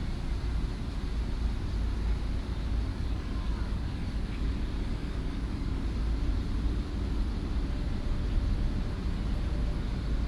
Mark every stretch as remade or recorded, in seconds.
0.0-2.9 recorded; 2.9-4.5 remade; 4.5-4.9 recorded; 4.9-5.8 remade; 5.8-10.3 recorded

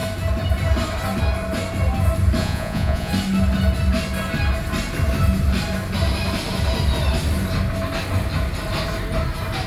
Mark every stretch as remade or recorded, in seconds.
0.0-2.4 recorded; 2.4-3.1 remade; 3.1-9.7 recorded

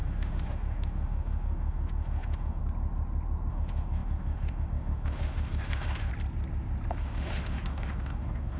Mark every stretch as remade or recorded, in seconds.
0.0-2.6 remade; 2.6-3.5 recorded; 3.5-6.1 remade; 6.1-6.9 recorded; 6.9-8.6 remade

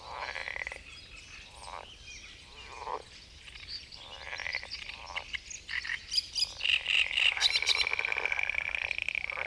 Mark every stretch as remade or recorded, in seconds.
0.0-0.4 remade; 0.4-2.9 recorded; 2.9-9.5 remade

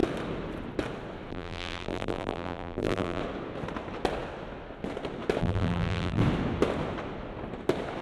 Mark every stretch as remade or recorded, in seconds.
0.0-1.3 recorded; 1.3-3.2 remade; 3.2-5.4 recorded; 5.4-6.2 remade; 6.2-8.0 recorded

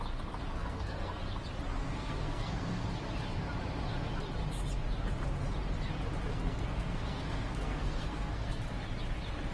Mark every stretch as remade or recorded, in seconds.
0.0-0.5 recorded; 0.5-1.2 remade; 1.2-1.8 recorded; 1.8-2.9 remade; 2.9-6.3 recorded; 6.3-8.6 remade; 8.6-9.5 recorded